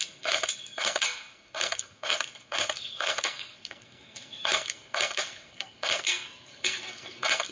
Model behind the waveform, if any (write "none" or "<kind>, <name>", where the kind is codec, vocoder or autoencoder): codec, SNAC